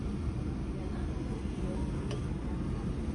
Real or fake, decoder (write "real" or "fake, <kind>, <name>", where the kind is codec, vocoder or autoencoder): real